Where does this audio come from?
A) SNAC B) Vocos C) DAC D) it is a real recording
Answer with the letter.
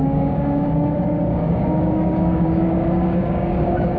C